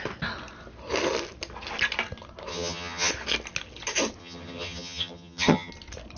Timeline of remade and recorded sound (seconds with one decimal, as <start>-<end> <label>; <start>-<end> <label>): 0.0-2.5 recorded; 2.5-3.1 remade; 3.1-4.2 recorded; 4.2-5.7 remade; 5.7-6.2 recorded